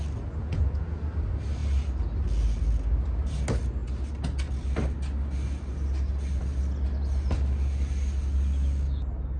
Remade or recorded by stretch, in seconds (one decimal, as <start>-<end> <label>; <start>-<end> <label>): 0.0-0.4 recorded; 0.4-1.0 remade; 1.0-9.4 recorded